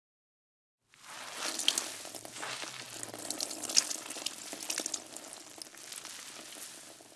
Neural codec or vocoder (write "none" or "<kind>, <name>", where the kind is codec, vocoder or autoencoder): none